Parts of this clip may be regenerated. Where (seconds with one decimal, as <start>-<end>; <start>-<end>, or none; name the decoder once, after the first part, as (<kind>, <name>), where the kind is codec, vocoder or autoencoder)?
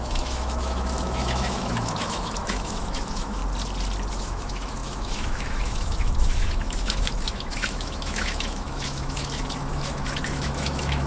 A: 0.0-3.4 (autoencoder, DAC-VAE); 4.1-11.1